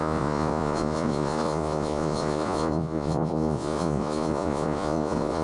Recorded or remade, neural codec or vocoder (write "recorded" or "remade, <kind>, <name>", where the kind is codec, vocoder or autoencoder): remade, vocoder, Vocos